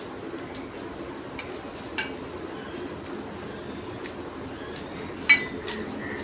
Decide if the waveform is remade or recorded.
recorded